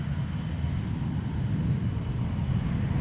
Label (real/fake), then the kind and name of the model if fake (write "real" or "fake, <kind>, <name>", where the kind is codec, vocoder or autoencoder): real